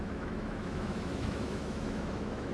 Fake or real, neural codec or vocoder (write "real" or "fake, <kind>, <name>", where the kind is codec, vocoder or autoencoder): fake, autoencoder, DAC-VAE